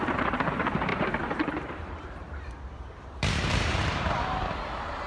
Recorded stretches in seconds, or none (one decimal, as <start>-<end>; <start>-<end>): none